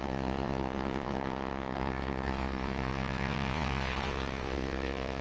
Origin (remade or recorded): remade